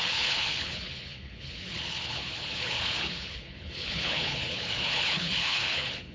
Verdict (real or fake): fake